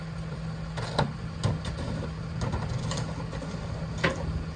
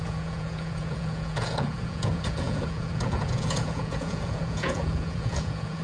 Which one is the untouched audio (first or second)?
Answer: first